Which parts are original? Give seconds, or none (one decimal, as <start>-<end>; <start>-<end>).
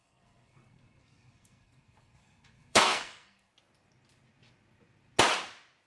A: 3.5-5.9